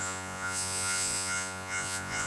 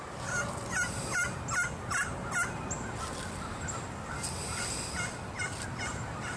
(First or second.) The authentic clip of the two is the second